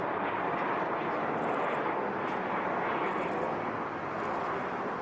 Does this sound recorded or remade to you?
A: recorded